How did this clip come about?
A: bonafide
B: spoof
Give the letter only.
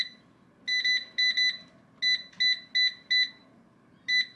A